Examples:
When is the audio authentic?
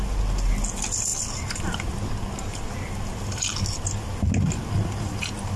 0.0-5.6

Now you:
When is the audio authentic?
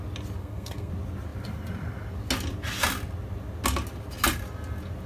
0.0-0.4; 0.9-5.1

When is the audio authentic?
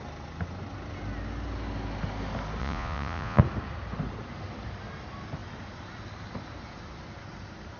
0.0-2.6; 3.4-7.8